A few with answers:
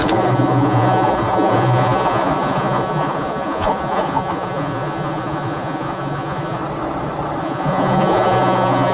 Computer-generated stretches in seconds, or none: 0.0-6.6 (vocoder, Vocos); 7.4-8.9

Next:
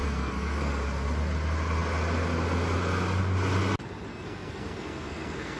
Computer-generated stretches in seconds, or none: 0.0-0.7 (codec, SNAC); 4.1-5.6